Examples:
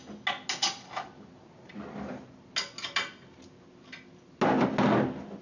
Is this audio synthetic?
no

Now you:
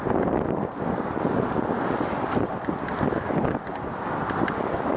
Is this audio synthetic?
no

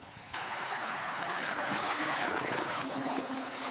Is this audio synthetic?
yes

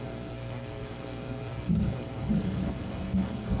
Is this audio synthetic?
yes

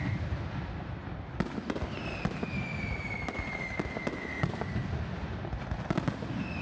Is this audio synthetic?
no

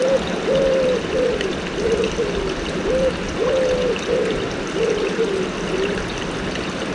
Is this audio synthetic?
no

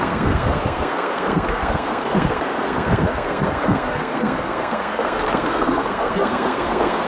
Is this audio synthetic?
yes